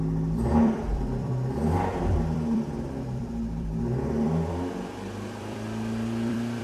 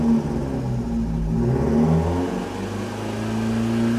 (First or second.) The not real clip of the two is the first